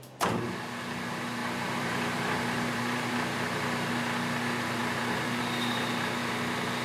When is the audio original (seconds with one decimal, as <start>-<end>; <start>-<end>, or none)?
0.0-1.4; 3.9-4.8; 5.4-6.8